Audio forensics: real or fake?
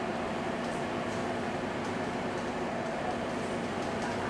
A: fake